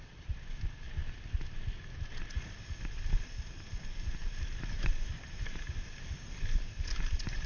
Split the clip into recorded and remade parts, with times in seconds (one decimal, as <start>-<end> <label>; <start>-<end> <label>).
0.0-7.5 recorded